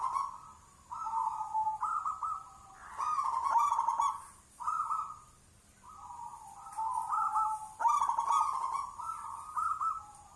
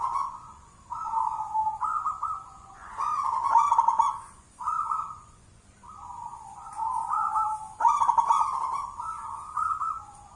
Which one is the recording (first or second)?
first